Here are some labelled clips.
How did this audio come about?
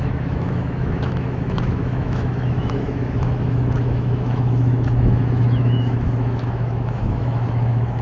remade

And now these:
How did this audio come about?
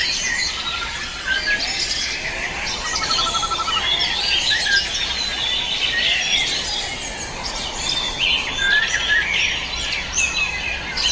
recorded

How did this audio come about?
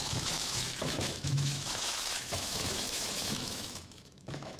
remade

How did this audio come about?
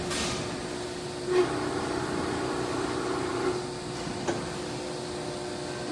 recorded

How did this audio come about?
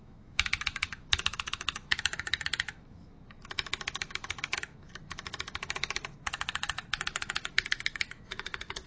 remade